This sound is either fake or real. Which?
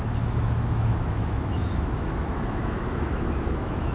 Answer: fake